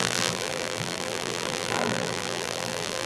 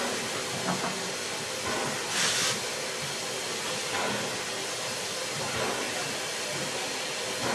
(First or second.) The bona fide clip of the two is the second